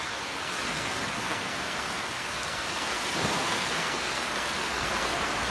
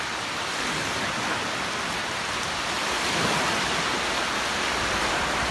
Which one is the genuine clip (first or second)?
second